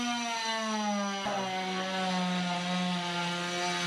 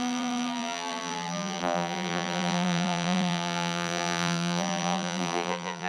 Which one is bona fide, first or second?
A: first